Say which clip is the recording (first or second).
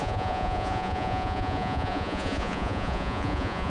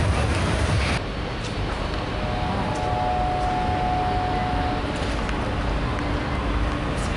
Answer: second